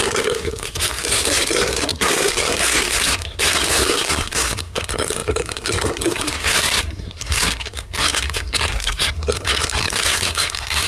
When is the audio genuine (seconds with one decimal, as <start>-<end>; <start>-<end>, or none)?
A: none